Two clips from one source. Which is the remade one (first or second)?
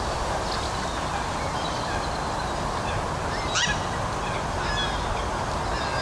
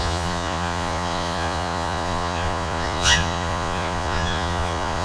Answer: second